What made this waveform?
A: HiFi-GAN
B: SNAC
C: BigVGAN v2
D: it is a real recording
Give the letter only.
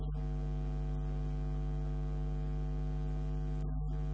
D